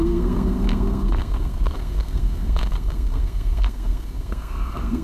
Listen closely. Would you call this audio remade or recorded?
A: remade